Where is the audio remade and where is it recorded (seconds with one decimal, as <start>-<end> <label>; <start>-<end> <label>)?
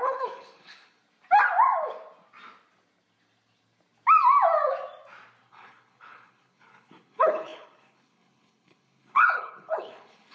0.0-1.0 remade; 1.0-5.5 recorded; 5.5-10.3 remade